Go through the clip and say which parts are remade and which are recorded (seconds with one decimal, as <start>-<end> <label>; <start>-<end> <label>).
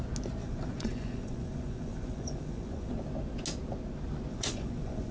0.0-0.4 recorded; 0.4-2.9 remade; 2.9-4.3 recorded; 4.3-5.1 remade